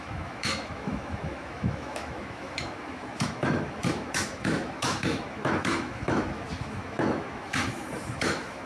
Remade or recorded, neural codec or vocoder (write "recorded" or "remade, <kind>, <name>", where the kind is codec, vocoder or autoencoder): remade, autoencoder, DAC-VAE